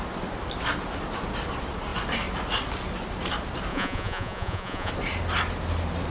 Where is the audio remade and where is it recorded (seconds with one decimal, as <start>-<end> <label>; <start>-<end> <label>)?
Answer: 0.0-3.7 recorded; 3.7-4.9 remade; 4.9-6.1 recorded